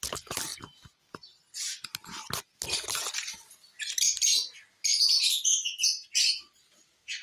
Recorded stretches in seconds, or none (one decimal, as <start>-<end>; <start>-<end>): 0.0-7.2